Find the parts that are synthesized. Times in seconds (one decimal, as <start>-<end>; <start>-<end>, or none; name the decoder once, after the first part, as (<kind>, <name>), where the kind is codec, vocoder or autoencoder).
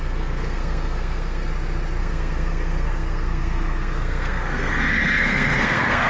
0.0-1.5 (codec, SNAC); 2.0-6.1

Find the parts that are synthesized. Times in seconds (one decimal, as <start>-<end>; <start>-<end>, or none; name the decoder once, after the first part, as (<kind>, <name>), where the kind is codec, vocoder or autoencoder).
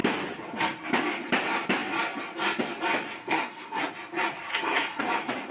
3.2-3.9 (codec, SNAC); 4.5-5.0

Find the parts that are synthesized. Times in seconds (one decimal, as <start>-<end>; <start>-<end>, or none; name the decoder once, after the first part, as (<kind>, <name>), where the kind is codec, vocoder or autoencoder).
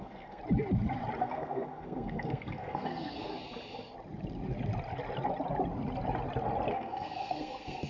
0.0-0.4 (codec, SNAC); 1.2-3.3; 6.7-7.9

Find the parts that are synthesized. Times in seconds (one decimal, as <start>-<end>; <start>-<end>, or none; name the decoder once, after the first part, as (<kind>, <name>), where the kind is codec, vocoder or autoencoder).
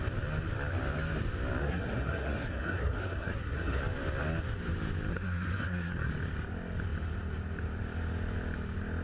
1.6-3.8 (codec, SNAC); 5.1-6.1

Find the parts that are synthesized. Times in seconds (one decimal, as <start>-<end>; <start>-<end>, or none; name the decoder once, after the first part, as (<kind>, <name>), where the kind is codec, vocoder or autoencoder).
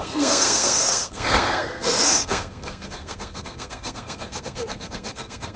0.0-5.6 (codec, SNAC)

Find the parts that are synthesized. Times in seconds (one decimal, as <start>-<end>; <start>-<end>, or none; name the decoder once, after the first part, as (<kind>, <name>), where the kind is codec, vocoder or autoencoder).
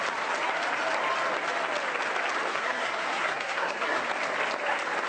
2.5-4.0 (codec, SNAC)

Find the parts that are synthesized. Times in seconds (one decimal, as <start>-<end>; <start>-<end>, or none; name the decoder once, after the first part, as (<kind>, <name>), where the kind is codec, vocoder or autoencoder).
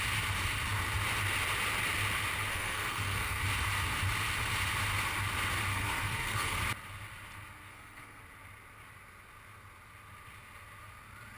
2.5-3.4 (codec, SNAC); 5.7-6.6; 7.7-8.2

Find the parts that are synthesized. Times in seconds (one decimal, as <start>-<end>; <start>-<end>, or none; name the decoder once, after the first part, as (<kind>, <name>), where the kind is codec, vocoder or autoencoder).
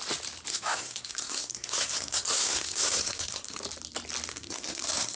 0.5-3.6 (codec, SNAC); 4.3-5.2